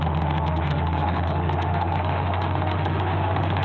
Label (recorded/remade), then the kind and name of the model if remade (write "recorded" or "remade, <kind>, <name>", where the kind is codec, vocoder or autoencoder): remade, autoencoder, DAC-VAE